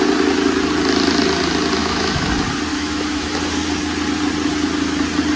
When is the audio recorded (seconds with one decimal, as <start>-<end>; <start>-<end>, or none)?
0.0-1.8; 2.3-2.7; 3.4-5.4